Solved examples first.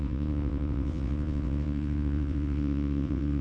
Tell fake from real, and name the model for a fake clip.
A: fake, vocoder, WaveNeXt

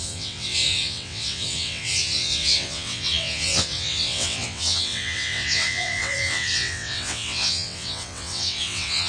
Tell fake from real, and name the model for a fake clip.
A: fake, vocoder, WaveNeXt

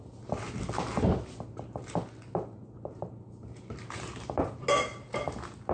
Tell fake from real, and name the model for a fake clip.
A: real